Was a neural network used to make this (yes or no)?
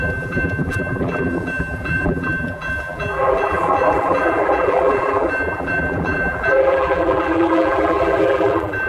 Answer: yes